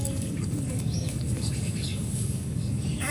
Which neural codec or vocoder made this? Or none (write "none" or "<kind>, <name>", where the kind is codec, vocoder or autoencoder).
codec, DAC